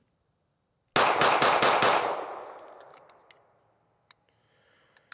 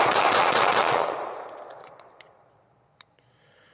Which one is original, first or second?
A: first